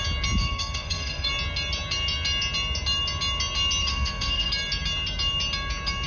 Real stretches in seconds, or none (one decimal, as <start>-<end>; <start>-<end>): 0.0-0.4; 1.3-3.8; 4.5-6.1